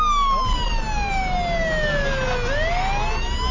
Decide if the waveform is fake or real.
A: real